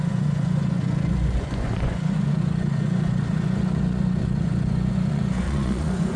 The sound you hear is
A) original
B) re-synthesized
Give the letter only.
B